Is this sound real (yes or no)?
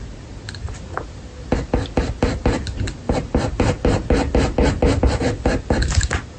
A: yes